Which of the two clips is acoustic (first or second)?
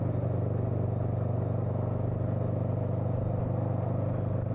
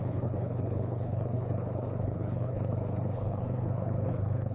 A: first